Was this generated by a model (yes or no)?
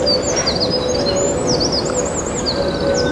no